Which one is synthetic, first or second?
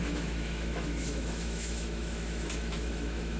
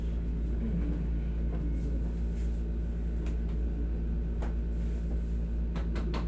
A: first